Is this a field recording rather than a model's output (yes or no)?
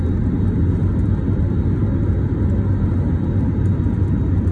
yes